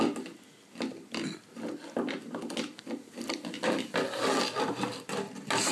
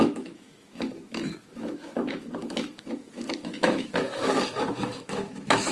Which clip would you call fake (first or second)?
second